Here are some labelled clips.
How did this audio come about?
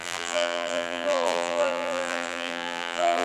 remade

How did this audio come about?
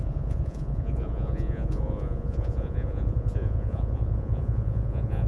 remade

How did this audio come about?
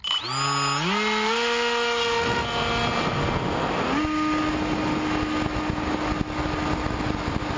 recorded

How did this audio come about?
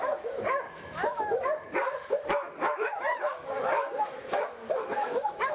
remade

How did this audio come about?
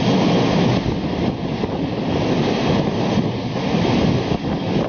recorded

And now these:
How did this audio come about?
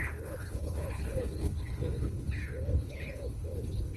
remade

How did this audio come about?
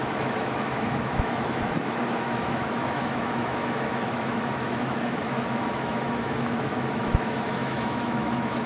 remade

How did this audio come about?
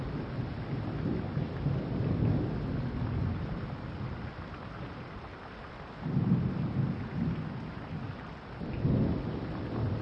recorded